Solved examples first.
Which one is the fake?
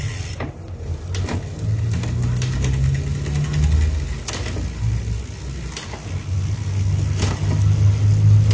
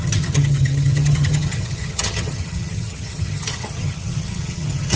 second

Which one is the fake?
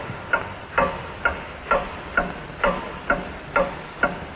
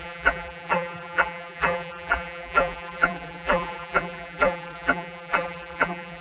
second